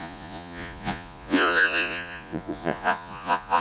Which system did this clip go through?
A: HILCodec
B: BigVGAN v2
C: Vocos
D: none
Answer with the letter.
C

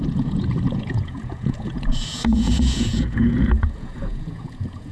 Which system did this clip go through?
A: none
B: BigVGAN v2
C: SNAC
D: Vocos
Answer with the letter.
D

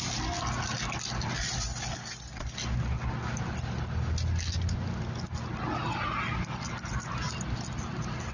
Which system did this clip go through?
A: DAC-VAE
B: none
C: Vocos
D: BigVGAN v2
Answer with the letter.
B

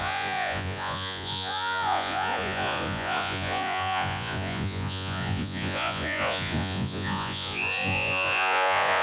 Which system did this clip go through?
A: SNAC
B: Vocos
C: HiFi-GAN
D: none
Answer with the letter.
B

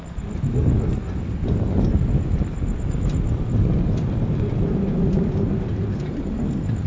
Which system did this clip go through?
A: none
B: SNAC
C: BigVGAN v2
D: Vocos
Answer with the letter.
A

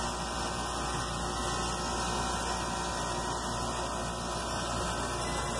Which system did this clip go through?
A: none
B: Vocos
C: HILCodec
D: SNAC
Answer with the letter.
A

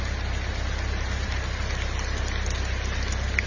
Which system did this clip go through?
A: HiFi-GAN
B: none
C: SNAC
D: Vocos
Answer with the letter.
B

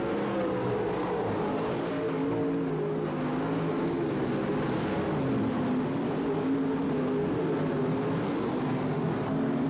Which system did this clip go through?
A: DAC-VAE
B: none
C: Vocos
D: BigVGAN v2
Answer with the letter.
B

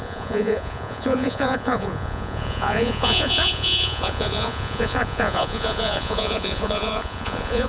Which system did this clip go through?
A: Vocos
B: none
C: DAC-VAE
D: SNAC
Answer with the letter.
A